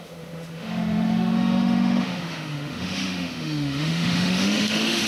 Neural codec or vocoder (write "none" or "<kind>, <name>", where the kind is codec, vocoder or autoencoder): autoencoder, DAC-VAE